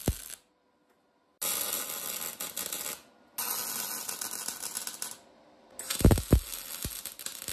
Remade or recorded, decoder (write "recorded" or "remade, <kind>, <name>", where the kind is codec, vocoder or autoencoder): recorded